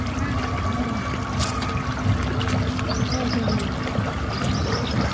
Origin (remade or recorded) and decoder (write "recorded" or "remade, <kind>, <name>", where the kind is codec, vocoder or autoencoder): recorded